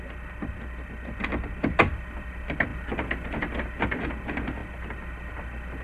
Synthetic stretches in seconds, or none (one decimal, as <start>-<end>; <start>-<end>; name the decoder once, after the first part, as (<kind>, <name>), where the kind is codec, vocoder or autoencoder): 0.0-5.8 (vocoder, BigVGAN v2)